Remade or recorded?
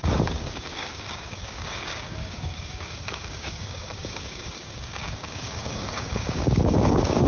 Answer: remade